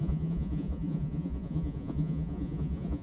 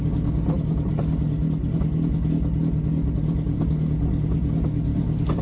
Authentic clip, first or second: second